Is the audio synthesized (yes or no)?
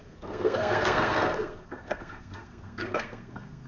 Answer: yes